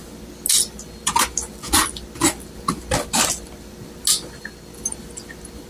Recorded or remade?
recorded